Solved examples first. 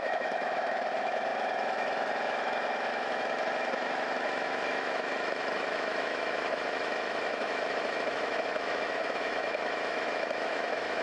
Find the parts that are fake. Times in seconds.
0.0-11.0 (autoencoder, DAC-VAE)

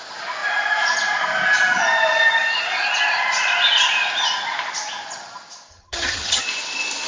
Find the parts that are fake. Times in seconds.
5.7-6.4 (vocoder, HiFi-GAN)

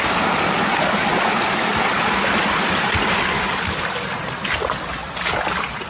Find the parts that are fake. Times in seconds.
none